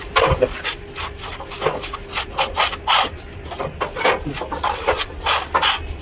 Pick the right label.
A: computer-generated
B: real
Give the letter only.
B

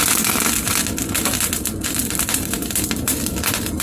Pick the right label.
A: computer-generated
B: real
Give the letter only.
A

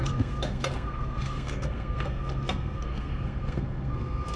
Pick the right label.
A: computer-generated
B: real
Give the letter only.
A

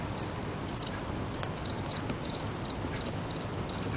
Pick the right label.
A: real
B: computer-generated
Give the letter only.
A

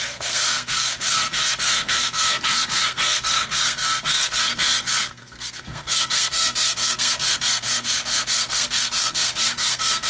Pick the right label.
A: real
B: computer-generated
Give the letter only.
B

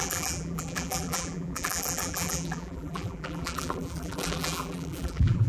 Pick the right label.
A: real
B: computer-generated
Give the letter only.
B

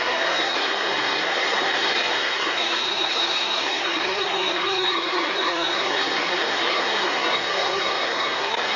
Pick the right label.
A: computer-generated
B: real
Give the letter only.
A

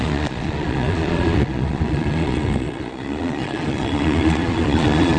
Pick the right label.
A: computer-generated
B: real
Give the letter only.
A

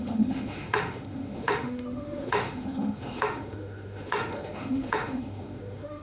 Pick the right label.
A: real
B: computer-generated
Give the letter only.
B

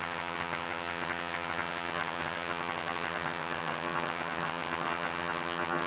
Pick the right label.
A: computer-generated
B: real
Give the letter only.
A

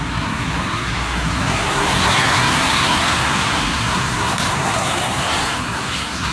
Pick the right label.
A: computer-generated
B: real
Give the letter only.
A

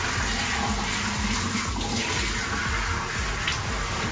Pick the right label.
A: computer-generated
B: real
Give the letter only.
B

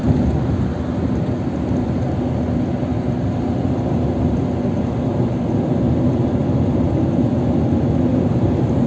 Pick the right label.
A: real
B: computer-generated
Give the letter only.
A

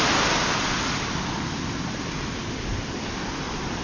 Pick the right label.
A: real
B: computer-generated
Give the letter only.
A